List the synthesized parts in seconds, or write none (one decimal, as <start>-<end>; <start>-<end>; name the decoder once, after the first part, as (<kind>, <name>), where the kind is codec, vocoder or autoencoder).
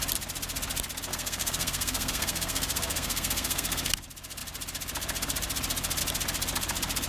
1.1-3.9 (codec, SNAC)